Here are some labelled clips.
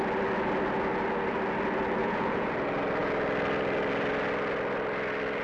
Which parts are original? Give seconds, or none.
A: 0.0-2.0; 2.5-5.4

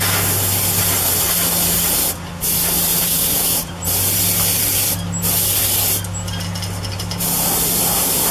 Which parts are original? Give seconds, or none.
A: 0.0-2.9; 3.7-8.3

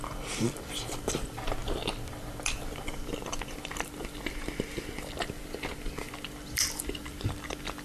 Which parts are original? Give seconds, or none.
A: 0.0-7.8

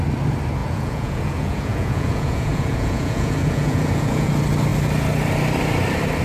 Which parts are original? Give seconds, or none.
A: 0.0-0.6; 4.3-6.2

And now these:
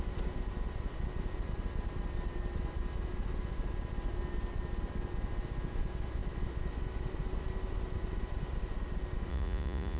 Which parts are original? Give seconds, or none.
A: 0.0-9.3

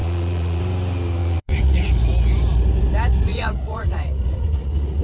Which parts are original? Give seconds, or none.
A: 0.6-1.2; 1.9-3.3